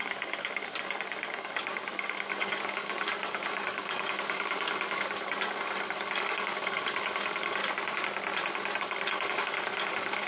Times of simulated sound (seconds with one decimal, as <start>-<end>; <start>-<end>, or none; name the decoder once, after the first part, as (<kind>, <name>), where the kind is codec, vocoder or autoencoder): 0.0-7.6 (codec, DAC); 8.8-10.3